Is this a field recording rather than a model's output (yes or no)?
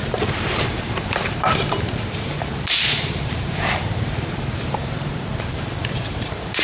no